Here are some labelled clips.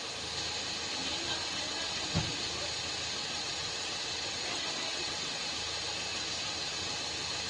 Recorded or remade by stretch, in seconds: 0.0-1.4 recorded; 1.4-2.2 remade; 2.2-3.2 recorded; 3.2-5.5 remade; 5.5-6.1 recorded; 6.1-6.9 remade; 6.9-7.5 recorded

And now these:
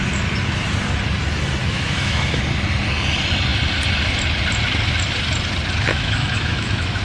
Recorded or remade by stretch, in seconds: 0.0-1.6 recorded; 1.6-2.4 remade; 2.4-5.9 recorded; 5.9-7.0 remade